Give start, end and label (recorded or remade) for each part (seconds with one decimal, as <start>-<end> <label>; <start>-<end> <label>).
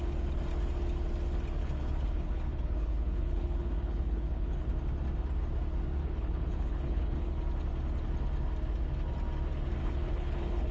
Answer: 0.0-1.6 recorded; 1.6-4.7 remade; 4.7-6.0 recorded; 6.0-7.3 remade; 7.3-9.8 recorded; 9.8-10.7 remade